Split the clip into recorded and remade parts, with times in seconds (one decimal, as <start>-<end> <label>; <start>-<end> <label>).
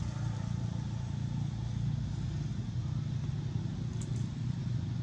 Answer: 0.0-1.6 remade; 1.6-4.0 recorded; 4.0-5.0 remade